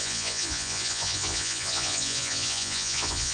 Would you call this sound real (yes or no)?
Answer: no